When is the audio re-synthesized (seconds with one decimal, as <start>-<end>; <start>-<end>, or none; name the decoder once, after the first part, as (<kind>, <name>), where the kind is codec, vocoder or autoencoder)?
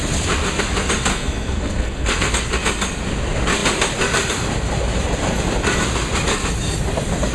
1.1-2.3 (codec, SNAC)